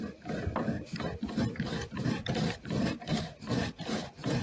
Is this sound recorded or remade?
remade